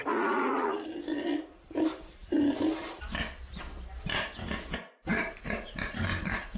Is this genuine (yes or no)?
yes